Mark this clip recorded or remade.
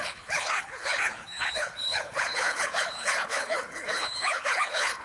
remade